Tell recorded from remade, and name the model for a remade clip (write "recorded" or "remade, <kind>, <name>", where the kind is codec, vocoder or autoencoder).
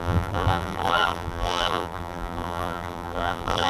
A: remade, vocoder, BigVGAN v2